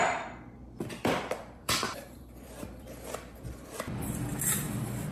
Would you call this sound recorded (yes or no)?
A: no